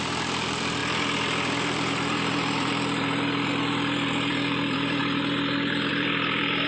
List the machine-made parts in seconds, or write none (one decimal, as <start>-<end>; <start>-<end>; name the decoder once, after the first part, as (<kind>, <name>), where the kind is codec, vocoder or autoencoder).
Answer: 0.0-5.0 (vocoder, BigVGAN v2); 5.9-6.7